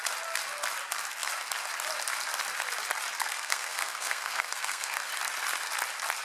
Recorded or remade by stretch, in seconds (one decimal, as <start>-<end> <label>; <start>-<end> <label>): 0.0-3.2 recorded; 3.2-5.1 remade; 5.1-6.2 recorded